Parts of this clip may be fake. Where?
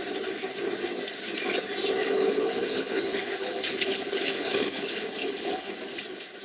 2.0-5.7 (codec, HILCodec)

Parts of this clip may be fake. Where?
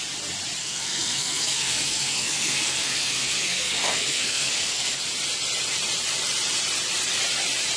0.6-5.0 (codec, SNAC)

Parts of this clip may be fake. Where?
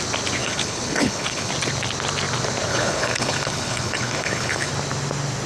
0.4-1.5 (codec, HILCodec); 2.7-4.7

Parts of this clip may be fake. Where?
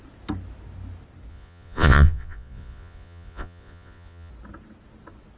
1.3-4.3 (vocoder, Vocos)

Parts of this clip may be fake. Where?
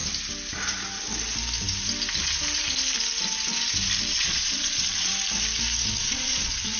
4.1-5.1 (vocoder, Vocos); 6.0-6.8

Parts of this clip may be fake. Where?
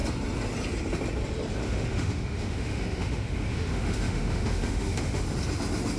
1.6-5.2 (autoencoder, DAC-VAE)